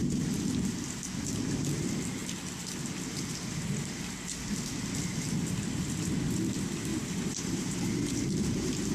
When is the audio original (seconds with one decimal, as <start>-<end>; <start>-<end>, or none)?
0.0-6.9; 7.8-8.9